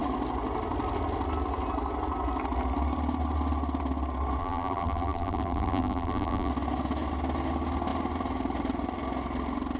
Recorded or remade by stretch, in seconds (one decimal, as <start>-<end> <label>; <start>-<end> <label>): 0.0-4.4 recorded; 4.4-6.5 remade; 6.5-9.8 recorded